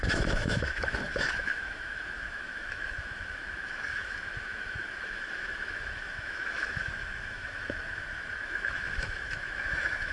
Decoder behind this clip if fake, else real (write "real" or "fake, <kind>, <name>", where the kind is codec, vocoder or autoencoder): fake, autoencoder, DAC-VAE